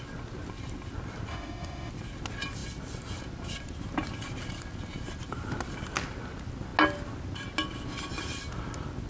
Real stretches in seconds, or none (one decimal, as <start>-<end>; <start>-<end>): 0.0-1.3; 1.9-9.1